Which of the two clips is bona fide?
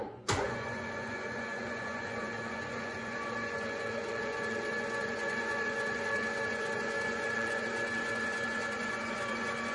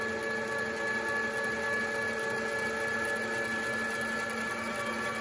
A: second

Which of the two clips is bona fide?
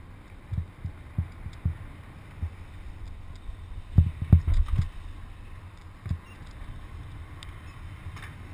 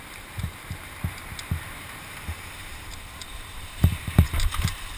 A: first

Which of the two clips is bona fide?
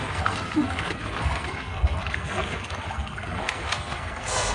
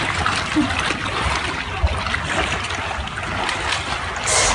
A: second